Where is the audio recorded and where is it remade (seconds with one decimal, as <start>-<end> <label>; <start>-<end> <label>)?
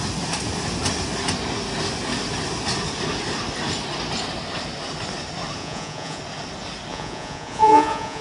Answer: 0.0-5.6 recorded; 5.6-6.2 remade; 6.2-6.9 recorded; 6.9-8.2 remade